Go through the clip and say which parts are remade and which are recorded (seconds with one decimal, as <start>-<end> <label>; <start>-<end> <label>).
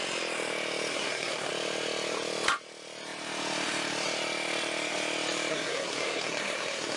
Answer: 0.0-0.9 recorded; 0.9-1.5 remade; 1.5-5.5 recorded; 5.5-7.0 remade